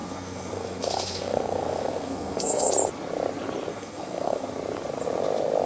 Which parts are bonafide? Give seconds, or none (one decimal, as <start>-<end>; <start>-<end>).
2.7-3.7; 4.5-5.7